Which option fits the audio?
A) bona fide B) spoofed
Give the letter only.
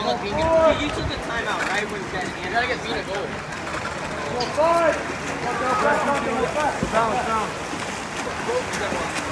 A